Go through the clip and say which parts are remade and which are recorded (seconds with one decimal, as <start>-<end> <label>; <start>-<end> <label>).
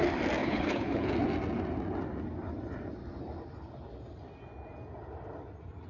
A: 0.0-0.4 recorded; 0.4-1.1 remade; 1.1-5.9 recorded